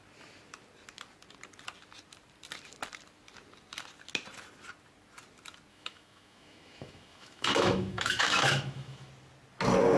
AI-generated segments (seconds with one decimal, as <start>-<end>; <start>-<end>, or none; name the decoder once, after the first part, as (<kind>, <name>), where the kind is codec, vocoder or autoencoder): 5.7-9.1 (autoencoder, DAC-VAE)